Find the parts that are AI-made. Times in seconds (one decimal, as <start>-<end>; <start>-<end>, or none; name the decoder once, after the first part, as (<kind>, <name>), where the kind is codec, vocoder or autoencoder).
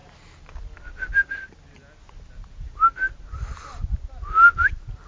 none